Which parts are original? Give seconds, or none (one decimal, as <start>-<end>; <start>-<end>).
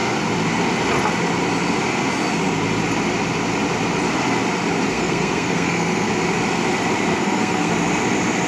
0.0-4.9; 6.1-7.1; 7.7-8.5